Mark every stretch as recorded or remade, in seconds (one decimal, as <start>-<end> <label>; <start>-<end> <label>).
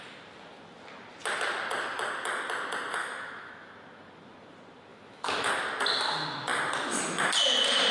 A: 0.0-3.0 recorded; 3.0-3.7 remade; 3.7-4.9 recorded; 4.9-5.5 remade; 5.5-7.9 recorded